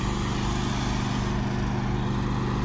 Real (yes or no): yes